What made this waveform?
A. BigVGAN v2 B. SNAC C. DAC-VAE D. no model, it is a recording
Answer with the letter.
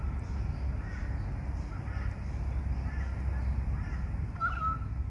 D